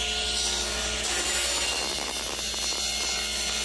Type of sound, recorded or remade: recorded